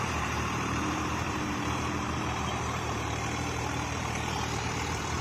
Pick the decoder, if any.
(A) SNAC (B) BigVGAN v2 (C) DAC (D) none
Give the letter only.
B